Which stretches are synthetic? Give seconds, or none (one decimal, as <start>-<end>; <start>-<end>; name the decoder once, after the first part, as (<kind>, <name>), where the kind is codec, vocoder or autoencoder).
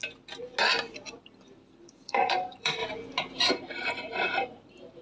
1.2-2.8 (vocoder, BigVGAN v2); 3.5-5.0